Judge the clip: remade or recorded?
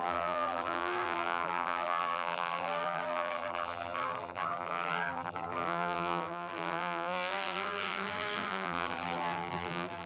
remade